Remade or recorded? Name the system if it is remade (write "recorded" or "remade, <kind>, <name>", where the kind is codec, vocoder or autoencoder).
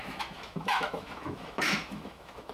remade, autoencoder, DAC-VAE